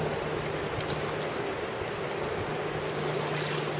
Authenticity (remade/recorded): recorded